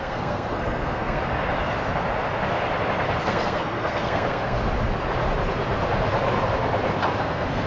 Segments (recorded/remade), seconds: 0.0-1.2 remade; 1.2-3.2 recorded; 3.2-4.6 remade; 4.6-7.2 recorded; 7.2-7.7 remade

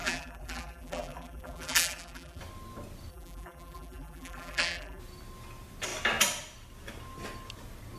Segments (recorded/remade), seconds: 0.0-2.4 remade; 2.4-3.1 recorded; 3.1-5.0 remade; 5.0-8.0 recorded

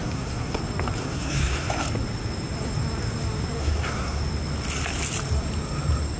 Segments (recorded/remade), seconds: 0.0-0.6 remade; 0.6-1.0 recorded; 1.0-1.7 remade; 1.7-3.6 recorded; 3.6-4.2 remade; 4.2-6.2 recorded

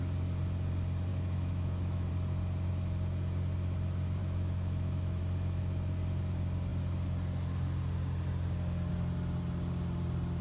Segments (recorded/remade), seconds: 0.0-1.1 recorded; 1.1-2.1 remade; 2.1-4.2 recorded; 4.2-5.2 remade; 5.2-10.4 recorded